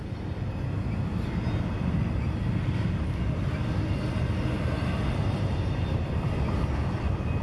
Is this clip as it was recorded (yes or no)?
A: yes